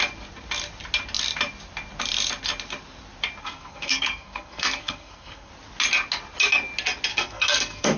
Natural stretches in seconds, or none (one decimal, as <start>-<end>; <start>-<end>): 0.0-3.4; 5.5-7.1